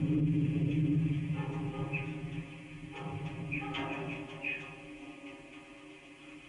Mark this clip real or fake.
real